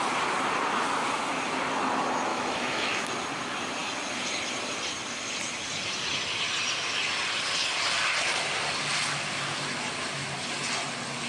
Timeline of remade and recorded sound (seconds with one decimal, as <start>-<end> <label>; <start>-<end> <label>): 0.0-2.3 recorded; 2.3-3.1 remade; 3.1-11.3 recorded

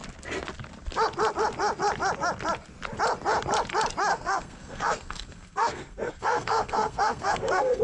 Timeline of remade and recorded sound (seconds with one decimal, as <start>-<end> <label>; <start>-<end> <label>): 0.0-4.1 recorded; 4.1-7.8 remade

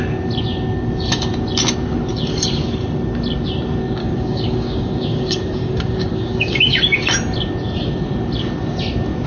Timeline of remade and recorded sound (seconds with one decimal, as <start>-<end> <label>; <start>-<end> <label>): 0.0-4.0 recorded; 4.0-6.8 remade; 6.8-9.3 recorded

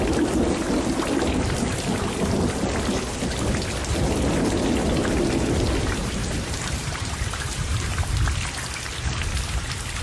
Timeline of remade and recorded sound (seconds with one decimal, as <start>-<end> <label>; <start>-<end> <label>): 0.0-6.2 recorded; 6.2-8.0 remade; 8.0-10.0 recorded

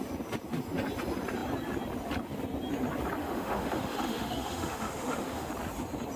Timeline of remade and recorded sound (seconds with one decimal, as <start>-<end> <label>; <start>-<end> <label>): 0.0-3.2 recorded; 3.2-5.5 remade; 5.5-6.2 recorded

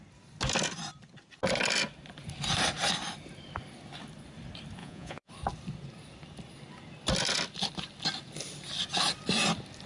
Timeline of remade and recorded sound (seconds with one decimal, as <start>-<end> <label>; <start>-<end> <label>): 0.0-4.8 recorded; 4.8-5.3 remade; 5.3-9.9 recorded

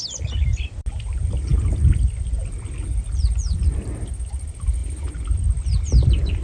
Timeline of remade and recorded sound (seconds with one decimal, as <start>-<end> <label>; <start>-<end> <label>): 0.0-6.4 recorded